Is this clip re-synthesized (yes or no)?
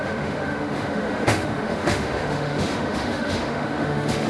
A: yes